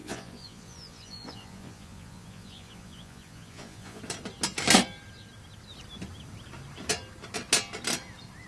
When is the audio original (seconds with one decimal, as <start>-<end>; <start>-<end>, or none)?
4.0-8.5